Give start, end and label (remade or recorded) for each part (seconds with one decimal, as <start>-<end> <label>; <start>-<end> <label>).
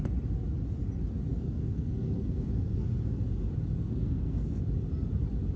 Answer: 0.0-1.3 recorded; 1.3-2.9 remade; 2.9-3.8 recorded; 3.8-4.6 remade; 4.6-5.6 recorded